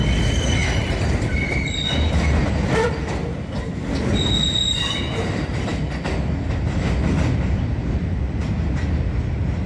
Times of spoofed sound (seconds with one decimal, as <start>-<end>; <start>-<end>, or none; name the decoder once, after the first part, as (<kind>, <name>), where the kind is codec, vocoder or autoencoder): none